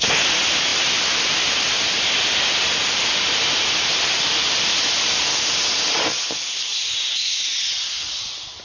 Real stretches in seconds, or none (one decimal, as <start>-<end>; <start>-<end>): 0.0-0.7; 5.9-8.6